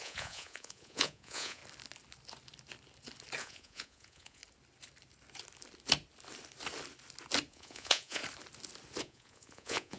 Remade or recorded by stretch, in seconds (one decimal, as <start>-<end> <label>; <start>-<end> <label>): 0.0-1.6 remade; 1.6-3.4 recorded; 3.4-4.4 remade; 4.4-7.5 recorded; 7.5-8.2 remade; 8.2-9.0 recorded; 9.0-10.0 remade